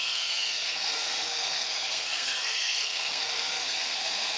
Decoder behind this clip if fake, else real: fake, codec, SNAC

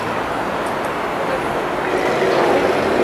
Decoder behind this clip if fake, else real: real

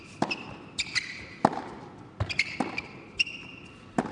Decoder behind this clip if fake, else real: real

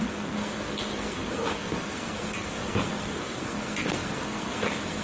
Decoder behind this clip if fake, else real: fake, codec, SNAC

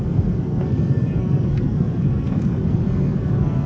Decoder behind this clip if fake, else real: fake, codec, SNAC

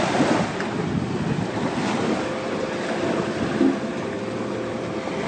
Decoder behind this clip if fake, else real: real